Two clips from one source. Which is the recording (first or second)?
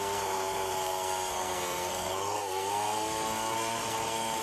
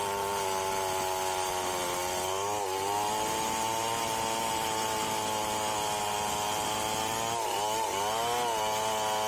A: second